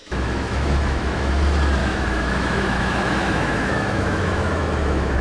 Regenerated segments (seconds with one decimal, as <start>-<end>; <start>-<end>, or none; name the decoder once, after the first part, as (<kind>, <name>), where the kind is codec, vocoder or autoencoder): 0.0-1.3 (autoencoder, DAC-VAE); 1.8-5.2